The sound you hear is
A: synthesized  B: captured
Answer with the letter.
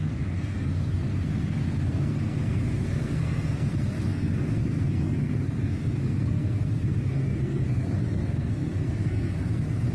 A